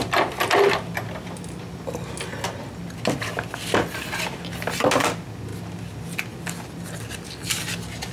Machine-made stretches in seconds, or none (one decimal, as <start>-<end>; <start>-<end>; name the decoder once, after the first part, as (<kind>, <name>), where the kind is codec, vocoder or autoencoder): none